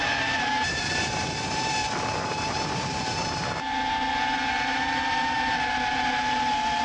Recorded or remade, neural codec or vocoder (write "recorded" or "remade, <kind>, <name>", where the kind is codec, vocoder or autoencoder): remade, vocoder, BigVGAN v2